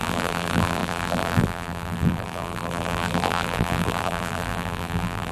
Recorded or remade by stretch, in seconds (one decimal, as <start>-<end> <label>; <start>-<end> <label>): 0.0-5.3 remade